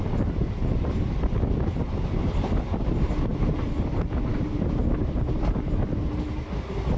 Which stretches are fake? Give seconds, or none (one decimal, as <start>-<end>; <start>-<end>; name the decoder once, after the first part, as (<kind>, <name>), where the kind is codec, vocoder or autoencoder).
0.0-1.6 (vocoder, BigVGAN v2); 2.2-2.9; 3.3-3.9; 4.3-6.0